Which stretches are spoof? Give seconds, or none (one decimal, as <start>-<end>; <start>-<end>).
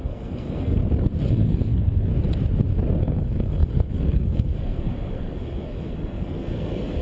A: 0.0-0.8; 1.3-2.1; 3.0-7.0